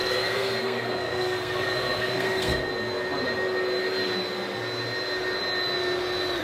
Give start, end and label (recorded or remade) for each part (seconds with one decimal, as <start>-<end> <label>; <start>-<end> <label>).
0.0-2.7 remade; 2.7-6.4 recorded